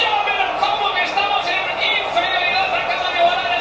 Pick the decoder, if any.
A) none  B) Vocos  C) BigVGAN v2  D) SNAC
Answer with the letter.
A